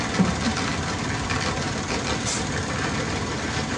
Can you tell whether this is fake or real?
real